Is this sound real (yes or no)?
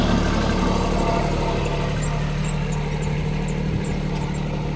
yes